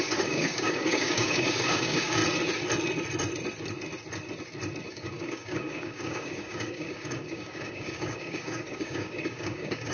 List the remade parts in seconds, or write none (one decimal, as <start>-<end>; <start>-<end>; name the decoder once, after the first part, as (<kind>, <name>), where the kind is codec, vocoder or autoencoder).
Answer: 0.0-2.2 (codec, DAC); 4.9-9.9